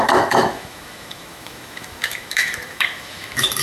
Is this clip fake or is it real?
fake